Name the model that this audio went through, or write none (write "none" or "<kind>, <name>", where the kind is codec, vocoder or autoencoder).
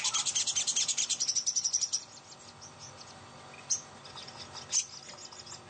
none